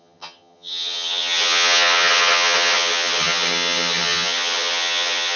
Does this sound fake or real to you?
fake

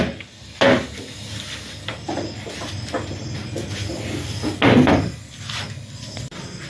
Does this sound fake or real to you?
real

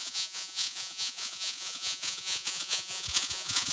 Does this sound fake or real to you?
fake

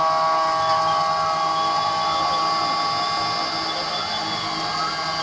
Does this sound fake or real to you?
real